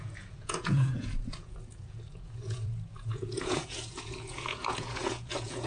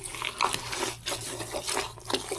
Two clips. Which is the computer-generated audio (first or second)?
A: first